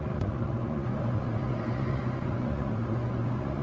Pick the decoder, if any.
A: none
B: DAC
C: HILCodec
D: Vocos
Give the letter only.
D